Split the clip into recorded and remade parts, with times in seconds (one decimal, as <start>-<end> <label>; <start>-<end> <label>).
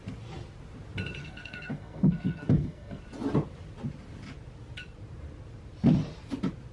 0.0-1.2 recorded; 1.2-3.0 remade; 3.0-6.7 recorded